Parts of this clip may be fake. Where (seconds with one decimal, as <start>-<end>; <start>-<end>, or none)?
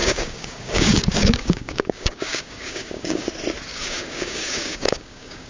0.0-3.3; 3.7-5.5